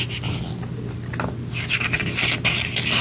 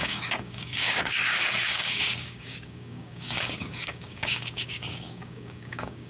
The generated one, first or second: second